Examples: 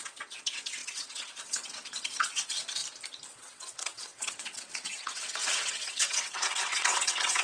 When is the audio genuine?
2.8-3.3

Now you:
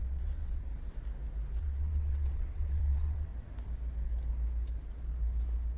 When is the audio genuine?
0.7-1.6; 3.3-5.8

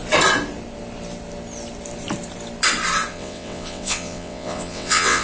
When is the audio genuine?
0.0-3.1

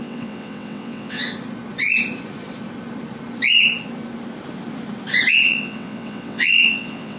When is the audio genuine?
1.2-5.3